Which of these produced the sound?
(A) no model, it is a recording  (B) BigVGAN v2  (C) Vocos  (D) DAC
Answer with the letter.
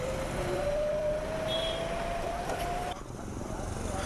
B